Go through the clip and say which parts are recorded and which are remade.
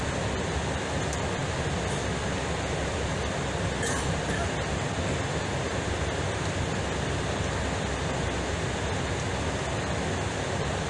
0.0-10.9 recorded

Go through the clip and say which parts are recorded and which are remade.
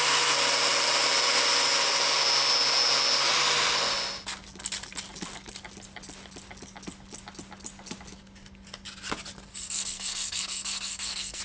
0.0-9.5 recorded; 9.5-11.4 remade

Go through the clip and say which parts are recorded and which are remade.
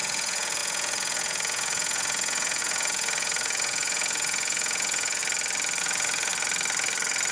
0.0-5.2 remade; 5.2-5.8 recorded; 5.8-6.3 remade; 6.3-7.3 recorded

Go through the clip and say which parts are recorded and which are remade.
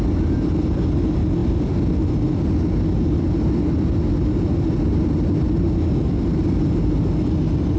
0.0-7.8 recorded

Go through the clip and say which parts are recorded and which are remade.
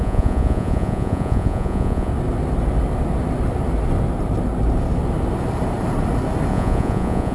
0.0-2.1 remade; 2.1-6.5 recorded; 6.5-7.3 remade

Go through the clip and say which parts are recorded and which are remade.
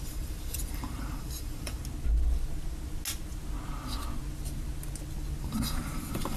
0.0-1.8 remade; 1.8-5.4 recorded; 5.4-6.4 remade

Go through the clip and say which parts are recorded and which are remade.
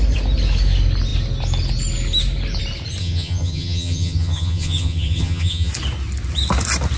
0.0-3.0 recorded; 3.0-5.7 remade; 5.7-7.0 recorded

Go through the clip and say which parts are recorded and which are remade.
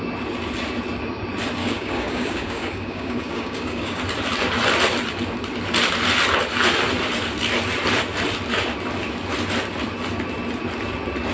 0.0-1.6 recorded; 1.6-4.0 remade; 4.0-11.3 recorded